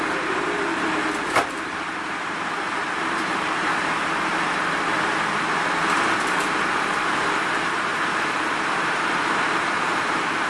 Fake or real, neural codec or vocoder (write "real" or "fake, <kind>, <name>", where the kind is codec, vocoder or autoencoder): fake, vocoder, BigVGAN v2